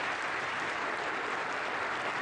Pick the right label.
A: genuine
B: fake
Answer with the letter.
B